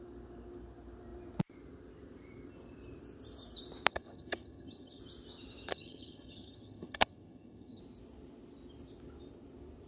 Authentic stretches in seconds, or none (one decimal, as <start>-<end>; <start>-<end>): 0.0-3.9; 5.0-5.7; 7.8-9.9